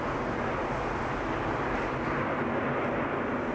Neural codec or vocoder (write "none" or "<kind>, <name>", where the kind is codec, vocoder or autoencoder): none